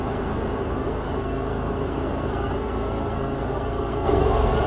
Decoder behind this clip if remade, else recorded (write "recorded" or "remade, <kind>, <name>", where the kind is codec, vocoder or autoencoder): remade, codec, SNAC